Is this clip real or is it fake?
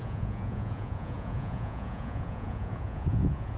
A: fake